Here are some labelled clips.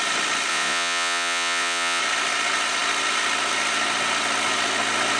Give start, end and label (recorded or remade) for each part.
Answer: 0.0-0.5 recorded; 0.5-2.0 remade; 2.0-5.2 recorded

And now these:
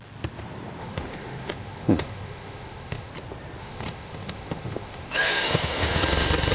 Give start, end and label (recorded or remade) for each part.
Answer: 0.0-0.8 recorded; 0.8-3.1 remade; 3.1-3.6 recorded; 3.6-6.0 remade; 6.0-6.5 recorded

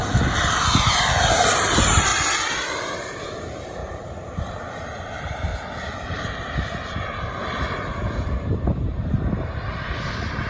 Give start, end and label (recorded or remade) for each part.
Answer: 0.0-1.3 recorded; 1.3-2.1 remade; 2.1-3.0 recorded; 3.0-5.5 remade; 5.5-7.9 recorded; 7.9-10.5 remade